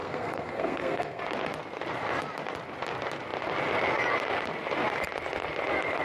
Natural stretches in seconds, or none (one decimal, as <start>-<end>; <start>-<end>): 1.2-6.0